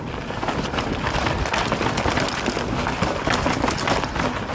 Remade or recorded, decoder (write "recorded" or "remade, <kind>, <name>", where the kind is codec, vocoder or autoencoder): recorded